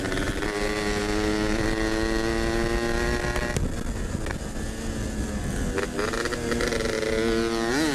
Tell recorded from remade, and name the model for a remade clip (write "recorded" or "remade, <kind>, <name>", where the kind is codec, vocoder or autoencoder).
recorded